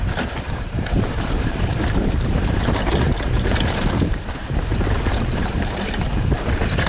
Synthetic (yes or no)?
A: yes